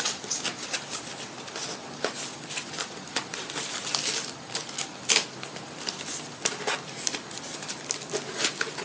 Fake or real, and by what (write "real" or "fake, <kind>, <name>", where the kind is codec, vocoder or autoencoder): real